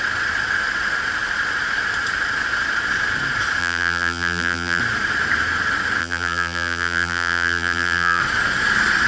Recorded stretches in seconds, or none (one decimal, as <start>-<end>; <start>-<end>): 0.0-3.6; 4.8-6.0; 8.2-9.1